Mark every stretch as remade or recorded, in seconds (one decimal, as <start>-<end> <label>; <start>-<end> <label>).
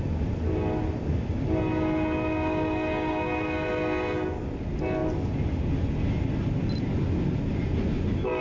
0.0-8.4 recorded